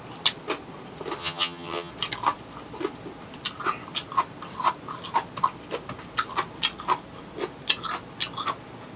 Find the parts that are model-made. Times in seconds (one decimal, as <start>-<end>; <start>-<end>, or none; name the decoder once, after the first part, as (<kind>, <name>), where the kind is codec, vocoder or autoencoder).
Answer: 1.2-1.9 (vocoder, HiFi-GAN)